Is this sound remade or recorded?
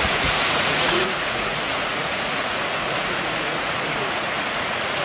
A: remade